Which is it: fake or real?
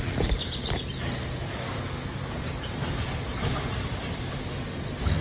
real